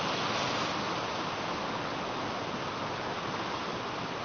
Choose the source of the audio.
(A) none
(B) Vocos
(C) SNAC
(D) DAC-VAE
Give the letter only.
A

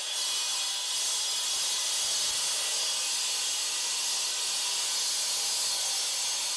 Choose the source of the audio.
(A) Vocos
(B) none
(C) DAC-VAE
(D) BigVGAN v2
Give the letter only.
B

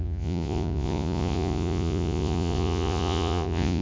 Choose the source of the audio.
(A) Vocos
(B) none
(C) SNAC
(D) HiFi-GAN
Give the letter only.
A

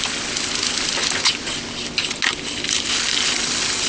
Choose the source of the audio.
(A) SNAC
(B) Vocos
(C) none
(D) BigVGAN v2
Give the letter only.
C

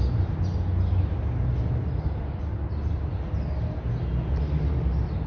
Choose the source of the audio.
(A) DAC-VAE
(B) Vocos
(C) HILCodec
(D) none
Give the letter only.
D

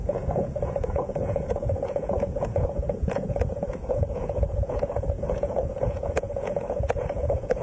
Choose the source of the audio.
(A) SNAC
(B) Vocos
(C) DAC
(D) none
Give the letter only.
B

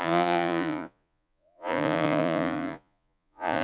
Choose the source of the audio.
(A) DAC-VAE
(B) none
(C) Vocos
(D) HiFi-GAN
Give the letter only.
C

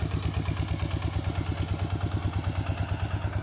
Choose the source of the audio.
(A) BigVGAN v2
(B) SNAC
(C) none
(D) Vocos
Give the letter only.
C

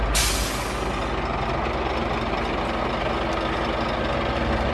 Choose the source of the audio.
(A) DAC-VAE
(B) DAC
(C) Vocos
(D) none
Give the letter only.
D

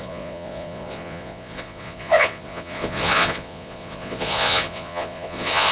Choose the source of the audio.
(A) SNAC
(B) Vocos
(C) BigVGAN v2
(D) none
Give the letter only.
B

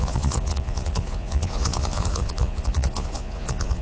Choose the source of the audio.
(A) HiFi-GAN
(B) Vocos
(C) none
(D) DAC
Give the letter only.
B